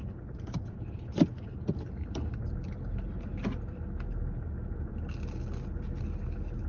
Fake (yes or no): no